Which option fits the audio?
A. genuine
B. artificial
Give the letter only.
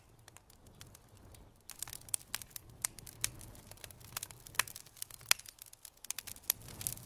A